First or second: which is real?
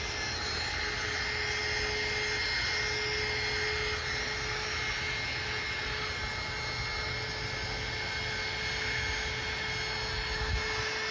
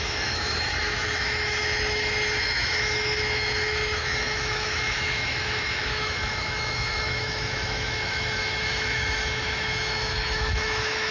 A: first